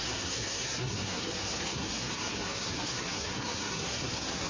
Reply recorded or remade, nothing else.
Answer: remade